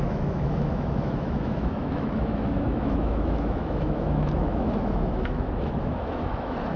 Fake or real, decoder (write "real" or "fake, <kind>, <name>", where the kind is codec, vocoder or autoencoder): fake, autoencoder, DAC-VAE